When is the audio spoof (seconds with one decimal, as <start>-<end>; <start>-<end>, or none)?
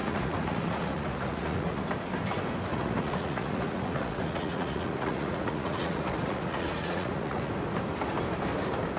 0.0-1.8; 2.7-7.5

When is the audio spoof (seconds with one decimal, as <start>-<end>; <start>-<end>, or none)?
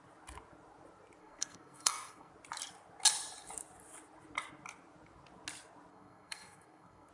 1.2-2.3; 5.9-7.1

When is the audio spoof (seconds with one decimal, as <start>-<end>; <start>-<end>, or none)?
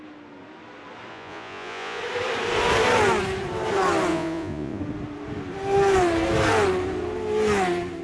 1.1-2.0; 4.1-4.8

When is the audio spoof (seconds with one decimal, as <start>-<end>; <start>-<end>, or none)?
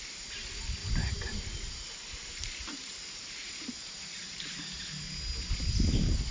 0.8-4.6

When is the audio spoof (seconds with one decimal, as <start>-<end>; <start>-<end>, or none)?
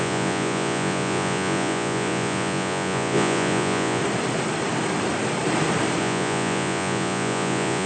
0.0-4.0; 6.0-7.9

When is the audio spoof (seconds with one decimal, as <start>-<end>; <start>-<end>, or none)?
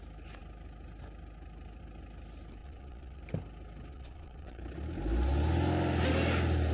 2.6-3.2; 3.9-4.6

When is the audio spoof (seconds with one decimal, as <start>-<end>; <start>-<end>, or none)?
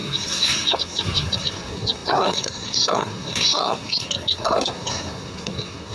0.0-5.9